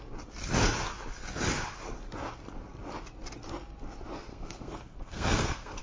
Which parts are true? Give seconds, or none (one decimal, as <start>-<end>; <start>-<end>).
0.0-4.3